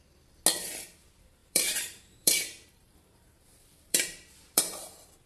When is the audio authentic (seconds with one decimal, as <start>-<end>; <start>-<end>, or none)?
0.0-1.4; 4.6-5.3